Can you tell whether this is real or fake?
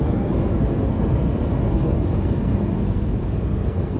fake